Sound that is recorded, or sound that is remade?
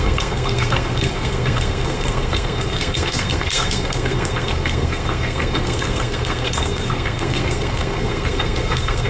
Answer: remade